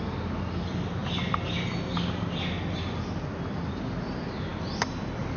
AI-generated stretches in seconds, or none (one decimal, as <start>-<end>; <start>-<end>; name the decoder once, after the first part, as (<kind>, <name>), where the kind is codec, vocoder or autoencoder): none